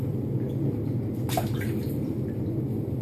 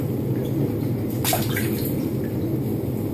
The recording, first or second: first